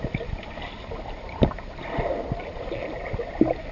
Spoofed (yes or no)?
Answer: no